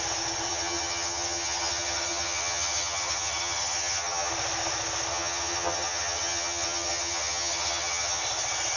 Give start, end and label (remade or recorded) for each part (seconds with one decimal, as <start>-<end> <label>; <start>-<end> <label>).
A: 0.0-0.5 recorded; 0.5-4.3 remade; 4.3-5.1 recorded; 5.1-8.2 remade; 8.2-8.8 recorded